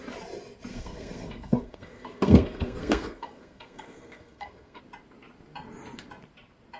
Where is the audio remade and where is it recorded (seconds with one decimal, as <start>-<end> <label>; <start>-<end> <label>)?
0.0-0.7 recorded; 0.7-4.8 remade; 4.8-6.8 recorded